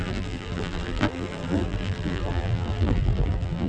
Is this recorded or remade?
remade